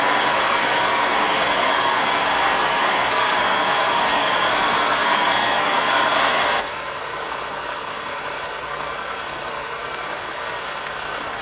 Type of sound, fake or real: fake